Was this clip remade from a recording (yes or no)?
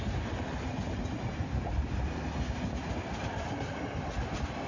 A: no